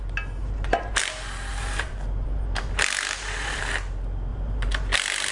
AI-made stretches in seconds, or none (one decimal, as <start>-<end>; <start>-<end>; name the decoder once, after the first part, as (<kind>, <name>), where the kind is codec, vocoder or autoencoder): 0.4-1.0 (vocoder, BigVGAN v2); 1.5-3.6; 4.3-5.3